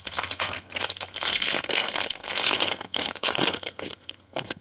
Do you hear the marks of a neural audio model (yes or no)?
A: yes